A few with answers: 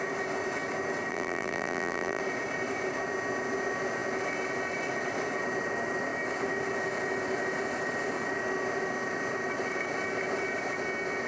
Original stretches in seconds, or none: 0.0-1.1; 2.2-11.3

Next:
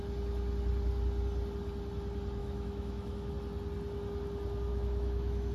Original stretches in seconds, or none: 0.0-2.4; 3.3-4.7